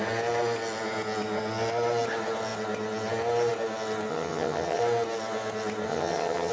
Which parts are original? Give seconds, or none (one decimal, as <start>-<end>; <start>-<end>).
0.0-4.1; 4.8-5.9